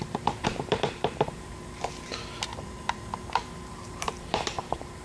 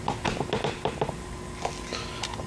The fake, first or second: first